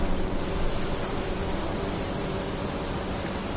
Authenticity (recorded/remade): recorded